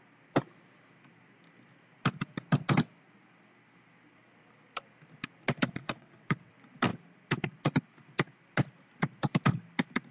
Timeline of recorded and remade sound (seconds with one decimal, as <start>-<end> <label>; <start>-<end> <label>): 0.0-5.8 recorded; 5.8-6.5 remade; 6.5-10.1 recorded